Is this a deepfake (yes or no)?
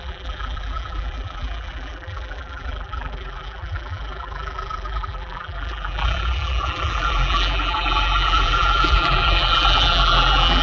yes